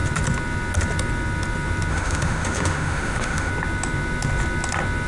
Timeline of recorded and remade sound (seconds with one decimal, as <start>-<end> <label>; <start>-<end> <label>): 0.0-1.9 recorded; 1.9-3.5 remade; 3.5-5.1 recorded